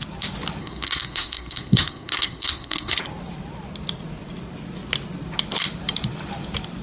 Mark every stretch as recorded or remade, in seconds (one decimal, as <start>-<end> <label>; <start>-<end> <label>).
0.0-0.6 recorded; 0.6-3.0 remade; 3.0-6.8 recorded